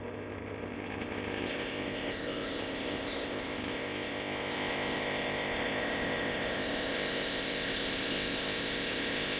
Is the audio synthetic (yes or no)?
yes